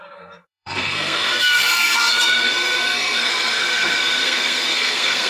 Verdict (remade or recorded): remade